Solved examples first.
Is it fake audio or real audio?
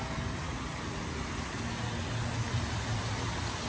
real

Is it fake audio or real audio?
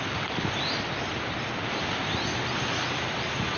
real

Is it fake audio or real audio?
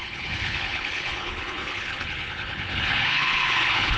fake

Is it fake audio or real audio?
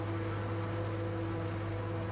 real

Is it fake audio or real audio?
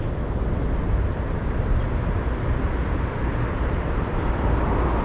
real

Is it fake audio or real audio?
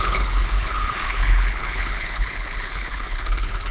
fake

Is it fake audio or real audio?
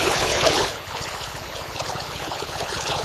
fake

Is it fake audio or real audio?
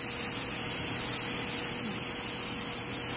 real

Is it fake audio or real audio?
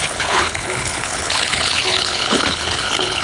fake